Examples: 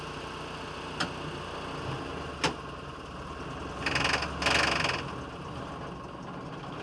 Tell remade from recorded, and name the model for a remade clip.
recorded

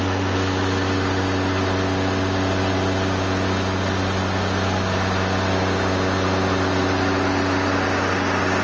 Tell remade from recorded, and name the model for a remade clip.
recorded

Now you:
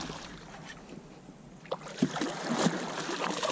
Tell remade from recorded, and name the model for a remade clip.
recorded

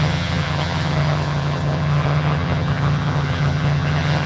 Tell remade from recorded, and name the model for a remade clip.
remade, vocoder, HiFi-GAN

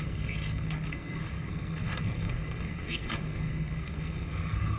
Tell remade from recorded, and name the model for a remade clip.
remade, codec, SNAC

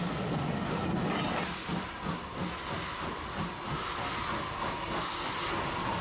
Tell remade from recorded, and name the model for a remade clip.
recorded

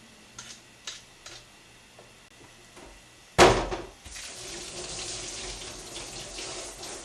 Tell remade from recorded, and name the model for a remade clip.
recorded